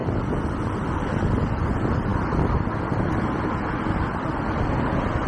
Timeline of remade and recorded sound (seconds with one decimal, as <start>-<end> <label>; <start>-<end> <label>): 0.0-1.1 remade; 1.1-5.3 recorded